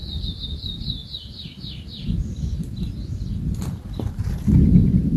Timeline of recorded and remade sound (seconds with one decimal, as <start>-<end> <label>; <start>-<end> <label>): 0.0-5.2 recorded